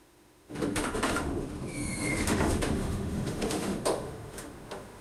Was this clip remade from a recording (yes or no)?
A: yes